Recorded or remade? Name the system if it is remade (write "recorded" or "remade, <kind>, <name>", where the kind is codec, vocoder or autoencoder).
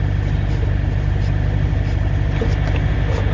recorded